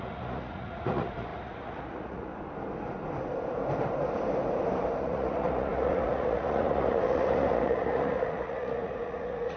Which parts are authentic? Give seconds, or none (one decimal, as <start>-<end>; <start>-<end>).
2.3-5.0